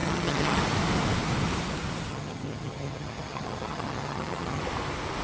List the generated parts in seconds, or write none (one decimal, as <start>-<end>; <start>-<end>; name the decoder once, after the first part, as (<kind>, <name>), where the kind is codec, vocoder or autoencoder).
0.0-0.6 (vocoder, HiFi-GAN); 2.1-4.6